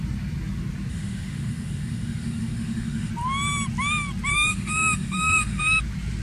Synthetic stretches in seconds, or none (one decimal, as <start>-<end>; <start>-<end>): 0.9-3.1; 4.3-5.6